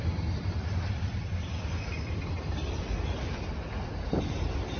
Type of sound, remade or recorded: remade